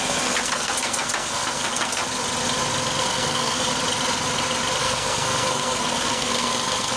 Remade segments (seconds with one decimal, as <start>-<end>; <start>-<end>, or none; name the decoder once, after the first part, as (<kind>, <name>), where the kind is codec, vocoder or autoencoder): 0.0-2.0 (codec, SNAC); 3.0-3.7; 4.8-7.0